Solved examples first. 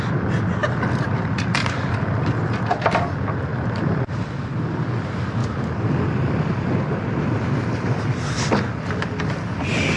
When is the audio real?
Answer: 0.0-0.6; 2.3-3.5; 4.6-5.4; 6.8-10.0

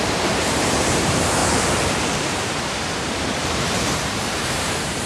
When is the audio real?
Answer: 1.4-2.0

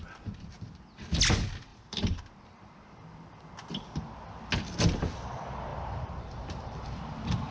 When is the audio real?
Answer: 0.0-1.7; 2.2-5.7; 7.0-7.5

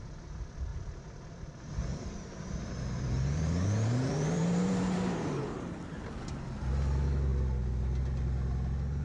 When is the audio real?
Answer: 0.0-0.7; 5.4-9.0

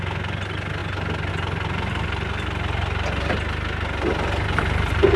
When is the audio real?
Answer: 0.0-5.2

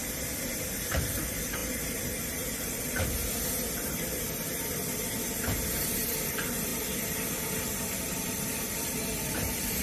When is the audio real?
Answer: 1.6-6.2